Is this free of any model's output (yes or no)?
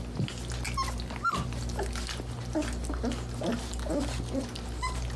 yes